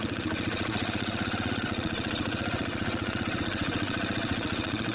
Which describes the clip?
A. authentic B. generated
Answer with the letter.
B